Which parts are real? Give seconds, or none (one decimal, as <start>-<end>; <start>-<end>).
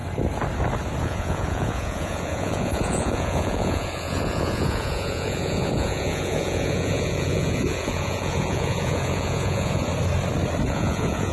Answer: 0.0-1.0; 9.9-10.7